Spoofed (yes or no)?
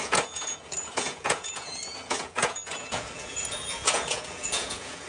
yes